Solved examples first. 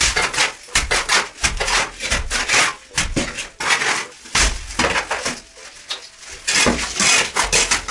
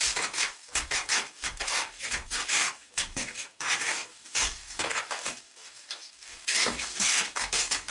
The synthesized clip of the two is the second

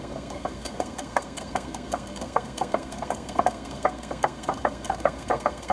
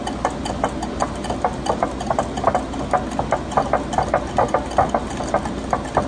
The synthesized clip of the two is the first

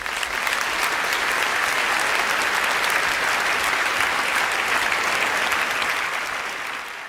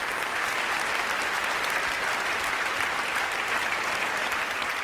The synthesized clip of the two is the second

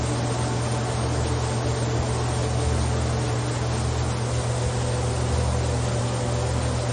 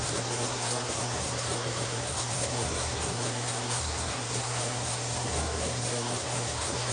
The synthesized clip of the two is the second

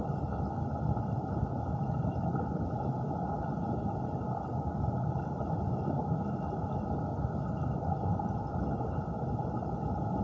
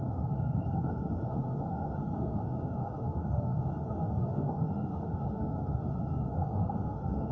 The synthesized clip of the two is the second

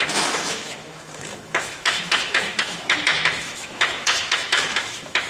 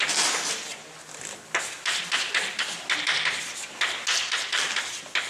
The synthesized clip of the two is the first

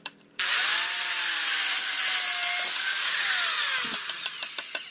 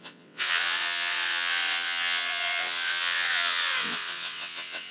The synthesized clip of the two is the second